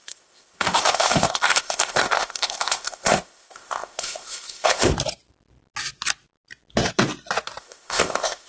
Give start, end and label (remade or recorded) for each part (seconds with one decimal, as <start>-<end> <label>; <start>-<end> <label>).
0.0-4.9 remade; 4.9-7.6 recorded; 7.6-8.5 remade